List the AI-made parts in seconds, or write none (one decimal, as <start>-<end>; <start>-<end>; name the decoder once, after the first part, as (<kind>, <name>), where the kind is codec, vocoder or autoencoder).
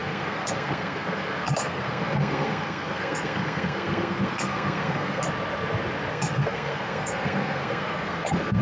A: 0.0-5.2 (codec, SNAC); 6.1-8.6